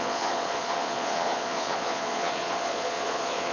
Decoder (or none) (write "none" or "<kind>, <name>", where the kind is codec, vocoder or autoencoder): vocoder, Vocos